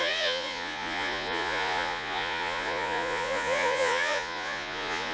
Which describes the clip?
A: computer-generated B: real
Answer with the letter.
A